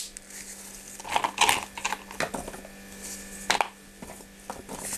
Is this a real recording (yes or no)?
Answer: yes